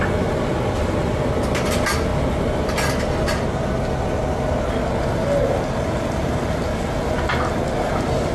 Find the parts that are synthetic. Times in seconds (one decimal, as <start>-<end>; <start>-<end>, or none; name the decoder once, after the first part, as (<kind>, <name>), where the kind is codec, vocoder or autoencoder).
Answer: none